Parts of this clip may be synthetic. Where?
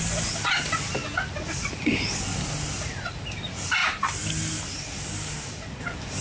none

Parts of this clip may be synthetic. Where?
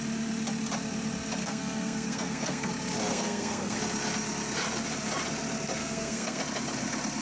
1.4-2.7; 3.1-3.8; 5.8-6.4